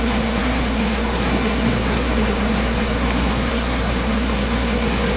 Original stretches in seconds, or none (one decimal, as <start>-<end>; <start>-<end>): none